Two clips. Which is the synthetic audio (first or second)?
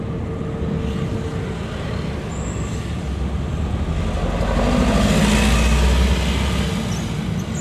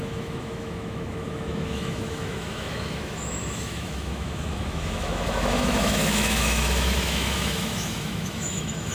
second